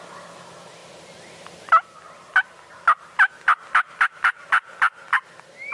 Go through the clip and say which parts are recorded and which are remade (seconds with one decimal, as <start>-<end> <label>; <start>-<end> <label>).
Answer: 0.0-5.7 recorded